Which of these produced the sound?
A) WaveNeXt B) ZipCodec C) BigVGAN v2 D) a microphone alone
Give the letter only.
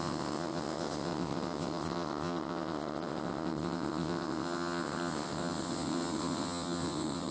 A